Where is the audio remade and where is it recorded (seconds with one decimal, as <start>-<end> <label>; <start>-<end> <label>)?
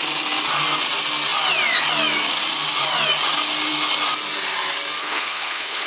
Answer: 0.0-5.0 recorded; 5.0-5.9 remade